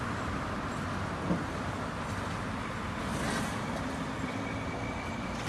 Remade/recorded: recorded